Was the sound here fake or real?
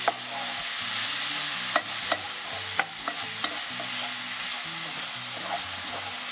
real